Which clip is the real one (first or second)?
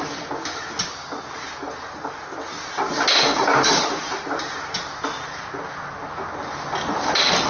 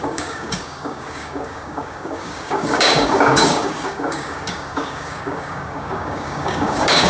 first